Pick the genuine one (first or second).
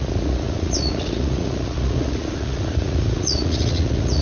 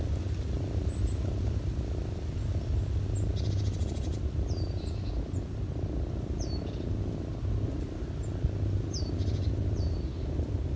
second